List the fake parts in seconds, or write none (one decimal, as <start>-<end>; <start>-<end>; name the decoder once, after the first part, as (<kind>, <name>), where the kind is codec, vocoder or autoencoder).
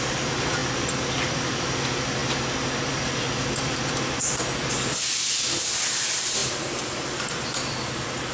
none